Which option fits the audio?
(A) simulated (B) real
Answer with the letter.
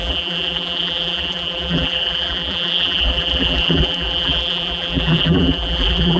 A